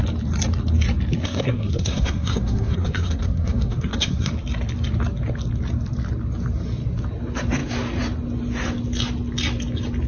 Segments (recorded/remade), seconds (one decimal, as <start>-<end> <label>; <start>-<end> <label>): 0.0-1.2 recorded; 1.2-4.3 remade; 4.3-10.1 recorded